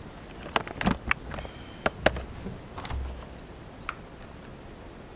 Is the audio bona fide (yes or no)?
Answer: yes